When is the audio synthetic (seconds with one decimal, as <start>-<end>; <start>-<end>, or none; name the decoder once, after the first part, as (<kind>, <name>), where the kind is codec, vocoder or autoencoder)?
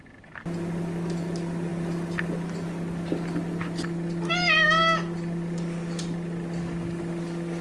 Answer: none